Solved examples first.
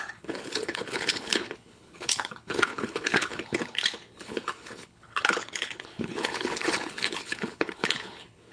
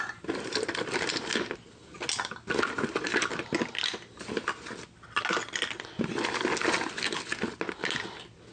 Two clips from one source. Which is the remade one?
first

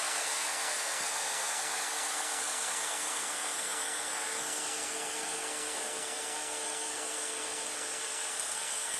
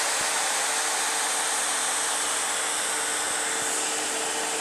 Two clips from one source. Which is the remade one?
first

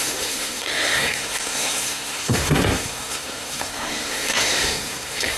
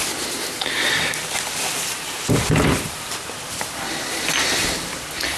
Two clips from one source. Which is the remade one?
first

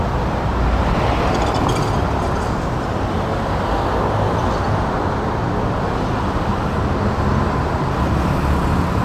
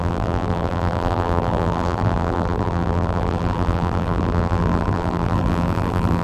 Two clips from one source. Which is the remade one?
second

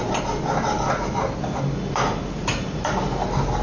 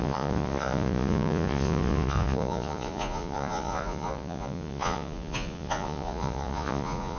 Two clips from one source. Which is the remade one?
second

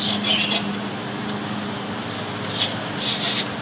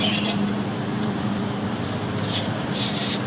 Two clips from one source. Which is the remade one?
second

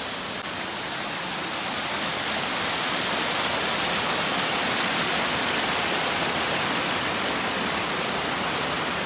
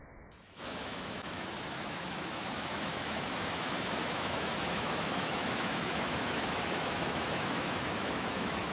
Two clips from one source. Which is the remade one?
second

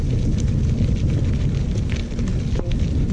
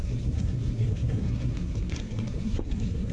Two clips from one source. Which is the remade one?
second